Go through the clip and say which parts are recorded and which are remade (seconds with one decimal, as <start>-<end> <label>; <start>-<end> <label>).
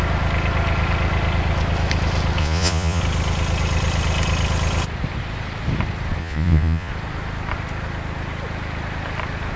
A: 0.0-2.4 recorded; 2.4-3.0 remade; 3.0-6.2 recorded; 6.2-6.9 remade; 6.9-9.6 recorded